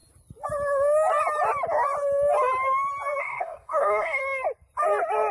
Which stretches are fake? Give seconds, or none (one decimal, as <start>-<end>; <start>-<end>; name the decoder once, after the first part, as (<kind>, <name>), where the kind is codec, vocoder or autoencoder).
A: 3.2-4.2 (codec, SNAC)